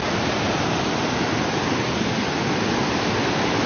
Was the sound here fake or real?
real